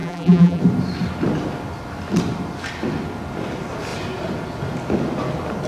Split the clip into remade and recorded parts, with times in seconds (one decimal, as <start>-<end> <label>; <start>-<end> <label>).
0.0-0.6 remade; 0.6-5.7 recorded